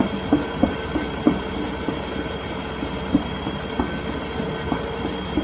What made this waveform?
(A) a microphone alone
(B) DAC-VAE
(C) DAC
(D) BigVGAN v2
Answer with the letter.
A